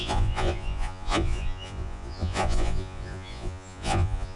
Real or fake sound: fake